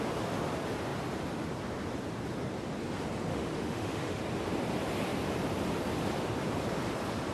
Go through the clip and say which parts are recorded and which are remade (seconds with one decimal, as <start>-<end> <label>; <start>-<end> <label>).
0.0-3.3 recorded; 3.3-4.2 remade; 4.2-7.3 recorded